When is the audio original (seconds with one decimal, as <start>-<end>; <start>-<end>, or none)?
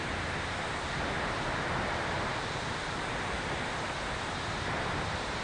0.0-0.7; 3.9-5.4